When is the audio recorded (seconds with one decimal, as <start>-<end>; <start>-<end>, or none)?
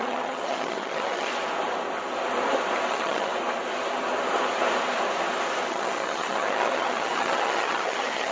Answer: 1.3-2.9; 3.3-5.7